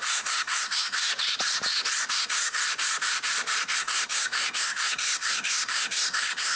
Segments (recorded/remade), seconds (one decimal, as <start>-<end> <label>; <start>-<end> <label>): 0.0-1.1 remade; 1.1-2.1 recorded; 2.1-2.6 remade; 2.6-3.8 recorded; 3.8-6.6 remade